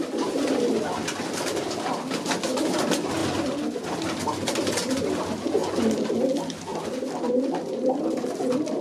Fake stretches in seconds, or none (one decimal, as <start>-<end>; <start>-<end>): none